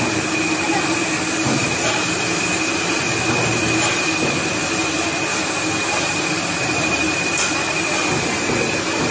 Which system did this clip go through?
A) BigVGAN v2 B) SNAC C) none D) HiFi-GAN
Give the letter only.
C